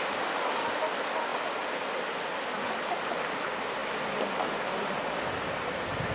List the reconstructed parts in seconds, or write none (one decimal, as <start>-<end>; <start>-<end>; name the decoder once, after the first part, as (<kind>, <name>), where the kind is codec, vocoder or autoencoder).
none

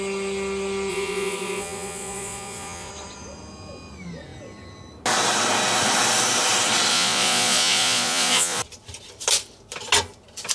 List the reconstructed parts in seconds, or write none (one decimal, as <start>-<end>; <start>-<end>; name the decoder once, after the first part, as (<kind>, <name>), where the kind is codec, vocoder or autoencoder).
0.9-2.9 (vocoder, Vocos); 6.9-8.6